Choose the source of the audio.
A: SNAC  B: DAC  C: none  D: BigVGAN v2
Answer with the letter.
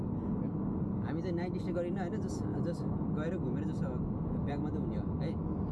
C